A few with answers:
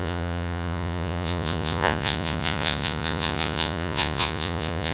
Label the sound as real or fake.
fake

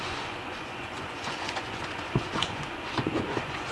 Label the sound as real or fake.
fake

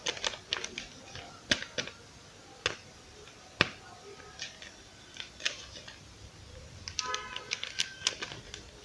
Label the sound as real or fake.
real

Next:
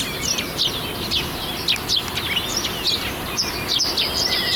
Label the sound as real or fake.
real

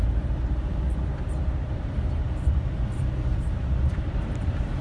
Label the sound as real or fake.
fake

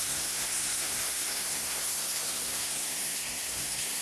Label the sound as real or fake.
fake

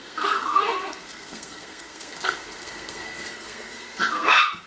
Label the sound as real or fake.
fake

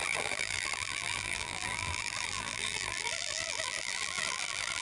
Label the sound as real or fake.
fake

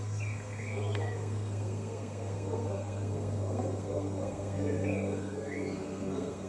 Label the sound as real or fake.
fake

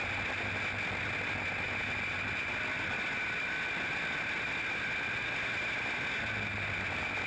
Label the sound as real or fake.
real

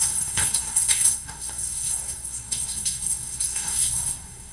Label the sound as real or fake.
fake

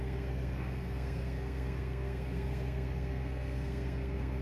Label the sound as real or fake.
fake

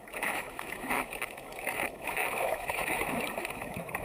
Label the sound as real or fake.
fake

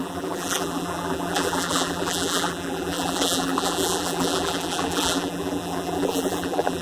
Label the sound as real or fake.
fake